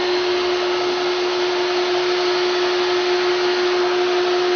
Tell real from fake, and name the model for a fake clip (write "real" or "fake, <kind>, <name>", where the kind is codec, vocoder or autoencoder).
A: real